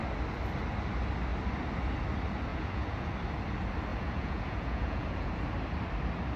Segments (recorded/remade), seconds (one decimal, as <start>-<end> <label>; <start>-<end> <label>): 0.0-2.5 recorded; 2.5-3.1 remade; 3.1-3.9 recorded; 3.9-5.3 remade; 5.3-6.4 recorded